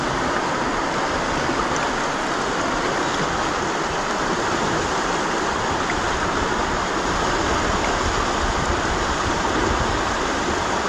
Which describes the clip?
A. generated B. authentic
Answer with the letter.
B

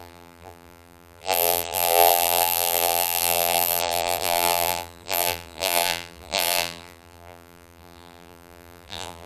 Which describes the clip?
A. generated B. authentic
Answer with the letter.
A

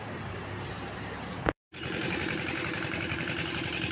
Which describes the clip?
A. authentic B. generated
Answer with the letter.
B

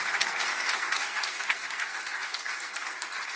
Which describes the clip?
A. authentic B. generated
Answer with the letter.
B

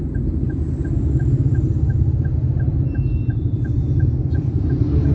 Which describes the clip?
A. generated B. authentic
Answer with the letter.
B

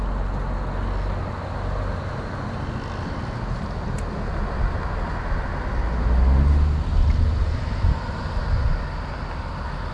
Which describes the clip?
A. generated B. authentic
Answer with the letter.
B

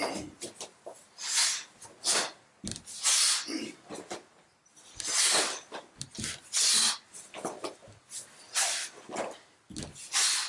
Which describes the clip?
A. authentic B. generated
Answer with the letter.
A